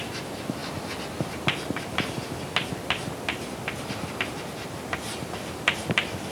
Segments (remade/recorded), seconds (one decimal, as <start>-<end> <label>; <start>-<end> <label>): 0.0-0.6 remade; 0.6-4.4 recorded; 4.4-6.3 remade